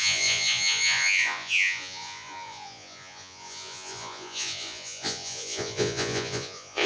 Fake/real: fake